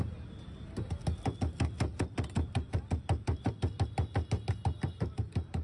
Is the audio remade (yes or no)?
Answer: no